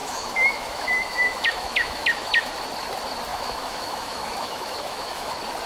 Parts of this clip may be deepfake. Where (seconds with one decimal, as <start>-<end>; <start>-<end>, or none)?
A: 0.0-2.5; 3.3-5.3